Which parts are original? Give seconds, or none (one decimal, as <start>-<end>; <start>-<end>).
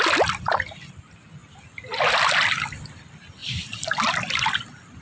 0.0-1.4; 3.0-3.4